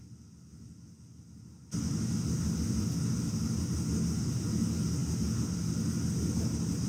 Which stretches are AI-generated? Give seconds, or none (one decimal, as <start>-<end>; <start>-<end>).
none